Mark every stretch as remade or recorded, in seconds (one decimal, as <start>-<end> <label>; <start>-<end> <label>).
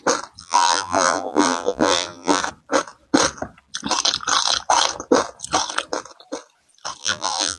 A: 0.0-0.4 recorded; 0.4-2.4 remade; 2.4-7.0 recorded; 7.0-7.6 remade